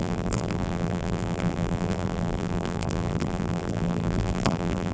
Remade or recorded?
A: remade